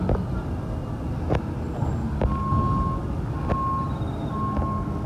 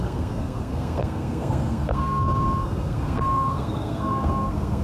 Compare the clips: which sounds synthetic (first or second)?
second